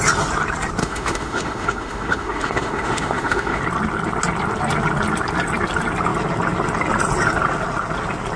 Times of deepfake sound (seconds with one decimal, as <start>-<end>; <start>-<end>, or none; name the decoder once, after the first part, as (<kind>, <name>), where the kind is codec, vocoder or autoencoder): 0.8-3.6 (autoencoder, DAC-VAE)